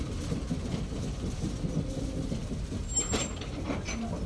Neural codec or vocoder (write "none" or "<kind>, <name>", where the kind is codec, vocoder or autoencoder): none